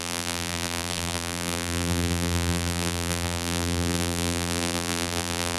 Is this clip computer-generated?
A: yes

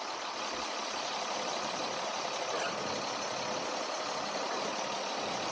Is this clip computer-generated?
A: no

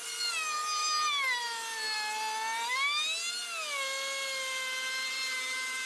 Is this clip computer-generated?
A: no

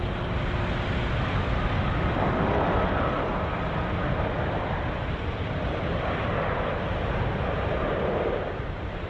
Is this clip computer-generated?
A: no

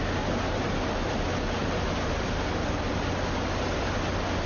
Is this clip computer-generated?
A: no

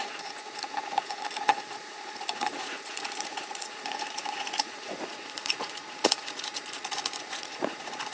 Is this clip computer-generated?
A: yes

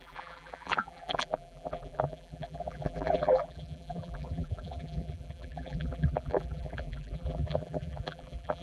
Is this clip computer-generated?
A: yes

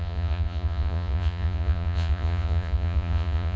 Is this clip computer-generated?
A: yes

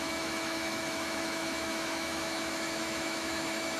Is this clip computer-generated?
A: yes